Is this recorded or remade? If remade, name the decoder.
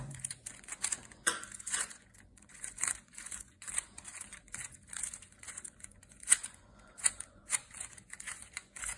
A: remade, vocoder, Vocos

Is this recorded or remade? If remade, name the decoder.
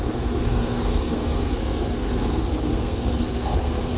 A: remade, codec, SNAC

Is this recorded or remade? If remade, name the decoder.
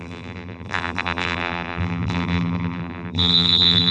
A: remade, vocoder, BigVGAN v2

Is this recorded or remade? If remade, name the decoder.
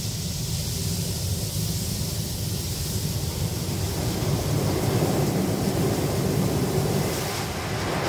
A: recorded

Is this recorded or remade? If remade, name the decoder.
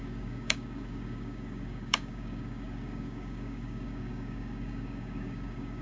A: remade, codec, DAC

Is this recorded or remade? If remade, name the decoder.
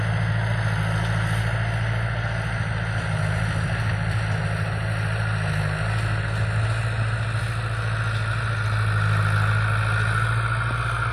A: recorded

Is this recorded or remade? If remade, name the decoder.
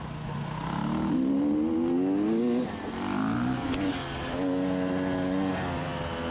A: recorded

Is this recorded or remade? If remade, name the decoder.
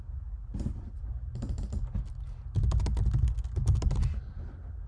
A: recorded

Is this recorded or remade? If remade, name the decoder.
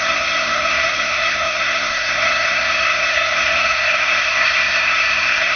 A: remade, codec, SNAC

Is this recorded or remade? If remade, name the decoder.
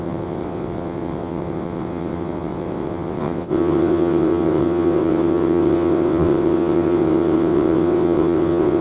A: remade, vocoder, WaveNeXt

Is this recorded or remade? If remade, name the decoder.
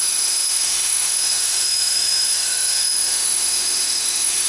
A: remade, autoencoder, DAC-VAE